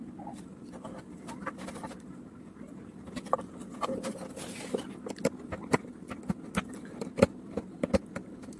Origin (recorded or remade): recorded